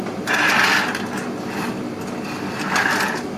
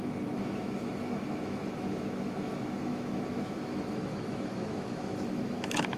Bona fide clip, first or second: first